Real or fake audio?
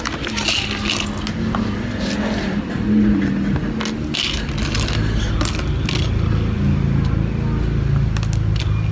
real